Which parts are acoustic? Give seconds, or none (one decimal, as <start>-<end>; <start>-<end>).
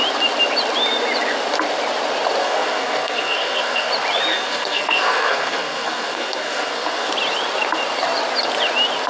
0.0-2.4; 3.9-4.3; 7.1-9.1